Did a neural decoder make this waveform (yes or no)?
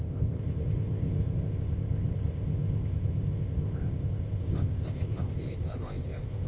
yes